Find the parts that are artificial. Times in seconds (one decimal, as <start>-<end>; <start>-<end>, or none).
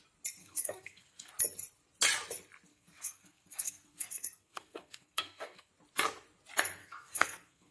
0.4-1.3; 2.7-5.7; 6.8-7.7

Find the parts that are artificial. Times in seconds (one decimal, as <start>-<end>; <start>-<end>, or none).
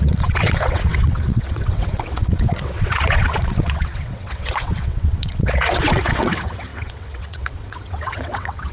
0.0-8.7